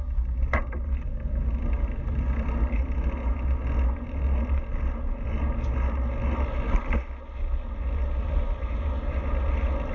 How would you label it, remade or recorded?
recorded